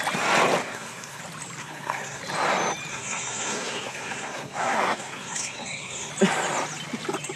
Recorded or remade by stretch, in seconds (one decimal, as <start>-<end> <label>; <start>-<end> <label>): 0.0-0.6 recorded; 0.6-1.2 remade; 1.2-1.6 recorded; 1.6-2.2 remade; 2.2-2.9 recorded; 2.9-6.1 remade; 6.1-7.4 recorded